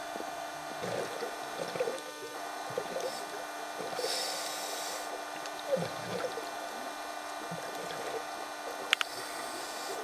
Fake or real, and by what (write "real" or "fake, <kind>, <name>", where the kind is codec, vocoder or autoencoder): real